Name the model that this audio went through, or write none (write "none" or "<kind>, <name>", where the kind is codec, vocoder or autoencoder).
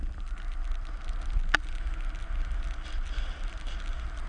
none